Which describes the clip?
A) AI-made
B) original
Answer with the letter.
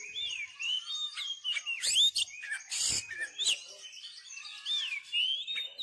B